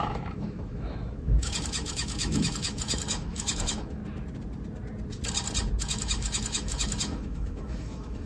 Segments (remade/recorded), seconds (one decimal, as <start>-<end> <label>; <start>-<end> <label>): 0.0-4.0 remade; 4.0-5.8 recorded; 5.8-8.3 remade